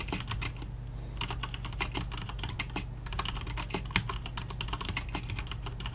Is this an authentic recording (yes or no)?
yes